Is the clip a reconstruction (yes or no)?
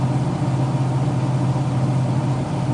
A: no